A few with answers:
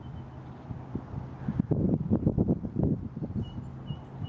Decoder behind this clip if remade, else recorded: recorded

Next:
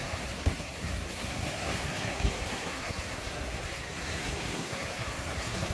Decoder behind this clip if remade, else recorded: remade, codec, SNAC